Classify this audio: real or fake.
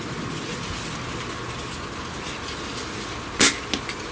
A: real